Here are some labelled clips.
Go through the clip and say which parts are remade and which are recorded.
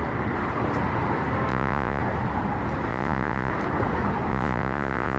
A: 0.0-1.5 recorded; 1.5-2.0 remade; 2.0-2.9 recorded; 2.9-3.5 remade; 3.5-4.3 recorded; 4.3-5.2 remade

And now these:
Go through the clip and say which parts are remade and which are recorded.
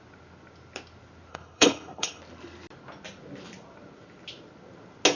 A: 0.0-1.3 recorded; 1.3-2.2 remade; 2.2-5.2 recorded